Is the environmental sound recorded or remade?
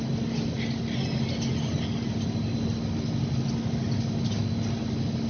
recorded